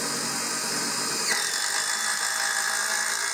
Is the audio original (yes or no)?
yes